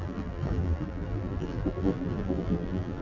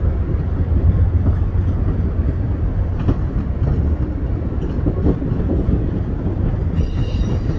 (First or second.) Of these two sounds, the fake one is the first